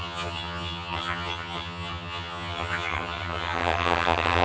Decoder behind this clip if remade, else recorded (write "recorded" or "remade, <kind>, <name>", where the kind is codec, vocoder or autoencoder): remade, vocoder, HiFi-GAN